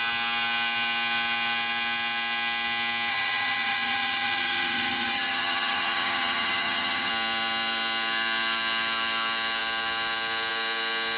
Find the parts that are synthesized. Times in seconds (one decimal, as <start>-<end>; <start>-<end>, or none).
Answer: 3.1-7.1